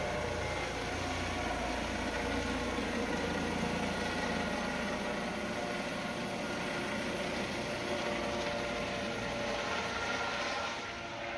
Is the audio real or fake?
real